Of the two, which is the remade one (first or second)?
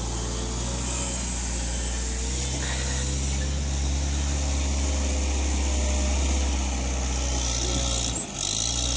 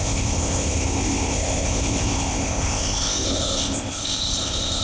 second